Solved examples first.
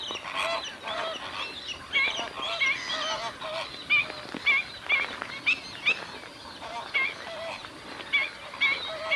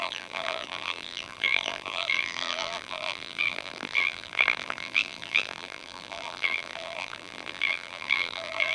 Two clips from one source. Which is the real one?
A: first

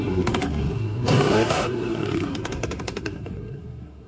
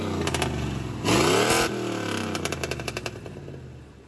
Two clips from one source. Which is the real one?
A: second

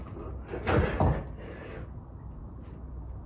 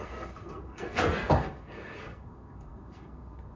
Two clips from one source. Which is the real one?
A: first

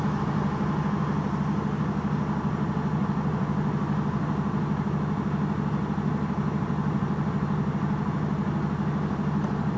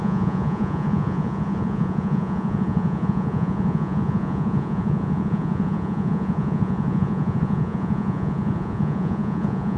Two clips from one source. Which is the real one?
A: first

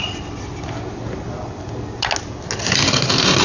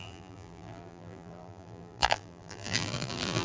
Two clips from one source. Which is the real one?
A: first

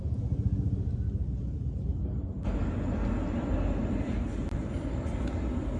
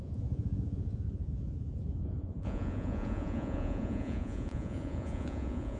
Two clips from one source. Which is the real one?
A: first